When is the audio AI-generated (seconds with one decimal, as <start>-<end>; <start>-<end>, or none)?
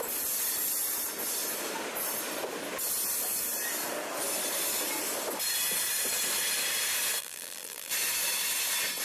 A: 7.2-7.9